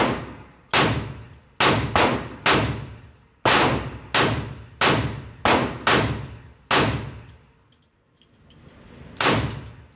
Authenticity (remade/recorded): recorded